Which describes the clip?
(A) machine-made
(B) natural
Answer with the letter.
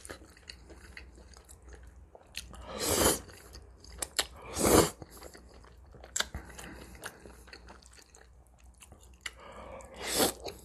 A